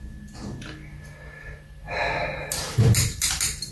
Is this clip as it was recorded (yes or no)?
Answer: yes